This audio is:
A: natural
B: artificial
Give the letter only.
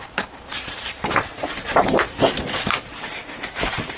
B